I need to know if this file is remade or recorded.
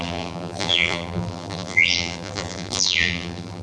remade